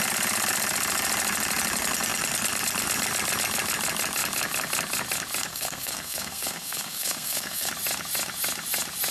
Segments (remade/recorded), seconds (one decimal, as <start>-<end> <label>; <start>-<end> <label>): 0.0-5.5 recorded; 5.5-7.7 remade; 7.7-9.1 recorded